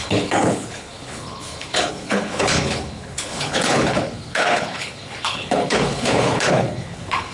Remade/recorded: remade